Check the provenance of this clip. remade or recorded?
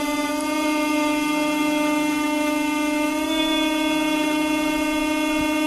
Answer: recorded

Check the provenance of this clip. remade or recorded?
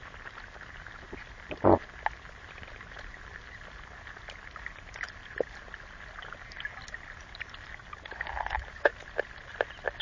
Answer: recorded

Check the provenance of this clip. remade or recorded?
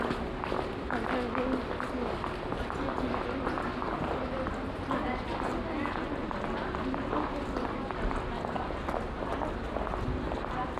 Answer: recorded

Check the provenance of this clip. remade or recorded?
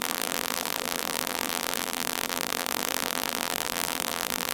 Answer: remade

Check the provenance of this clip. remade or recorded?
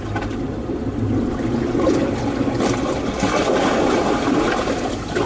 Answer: recorded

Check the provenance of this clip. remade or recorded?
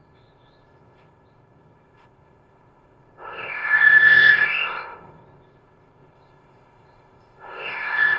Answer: remade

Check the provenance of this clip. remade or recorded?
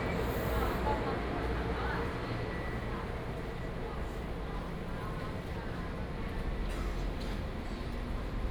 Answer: recorded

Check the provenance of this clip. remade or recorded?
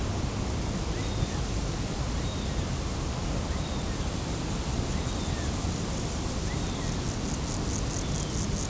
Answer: recorded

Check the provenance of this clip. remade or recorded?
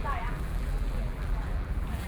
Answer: remade